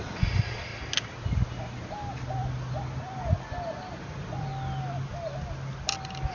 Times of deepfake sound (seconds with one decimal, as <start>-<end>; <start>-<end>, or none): 0.0-0.7; 4.0-4.5